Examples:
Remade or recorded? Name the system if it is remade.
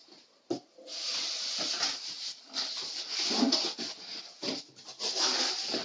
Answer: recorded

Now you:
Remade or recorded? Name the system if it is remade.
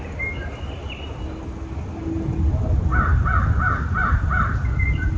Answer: recorded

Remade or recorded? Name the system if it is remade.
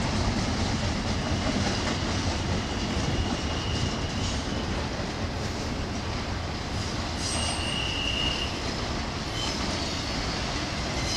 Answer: recorded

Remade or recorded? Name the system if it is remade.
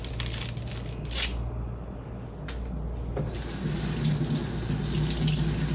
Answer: recorded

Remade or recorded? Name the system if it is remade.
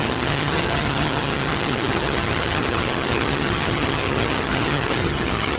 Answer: remade, vocoder, HiFi-GAN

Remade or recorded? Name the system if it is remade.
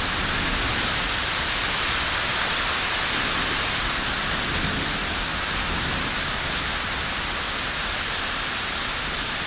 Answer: recorded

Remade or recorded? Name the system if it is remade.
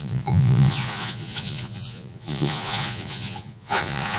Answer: remade, vocoder, Vocos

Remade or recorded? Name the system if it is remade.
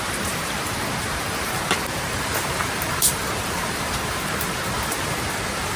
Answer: remade, vocoder, BigVGAN v2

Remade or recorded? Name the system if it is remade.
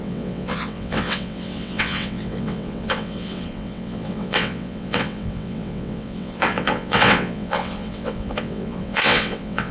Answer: remade, vocoder, WaveNeXt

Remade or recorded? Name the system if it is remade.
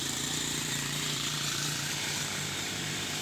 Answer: remade, vocoder, BigVGAN v2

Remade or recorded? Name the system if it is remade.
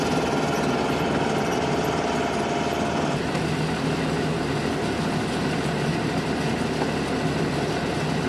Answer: recorded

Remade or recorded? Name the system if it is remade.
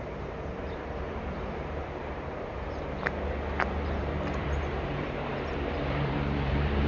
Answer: remade, vocoder, BigVGAN v2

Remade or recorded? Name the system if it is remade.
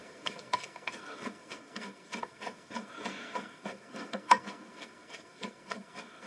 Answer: remade, codec, SNAC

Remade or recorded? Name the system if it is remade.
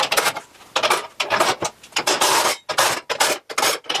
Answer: recorded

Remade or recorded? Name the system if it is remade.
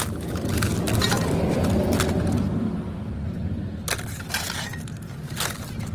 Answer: recorded